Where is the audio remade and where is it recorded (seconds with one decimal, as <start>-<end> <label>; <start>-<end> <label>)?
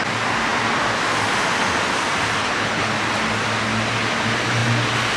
0.0-2.4 recorded; 2.4-2.9 remade; 2.9-5.2 recorded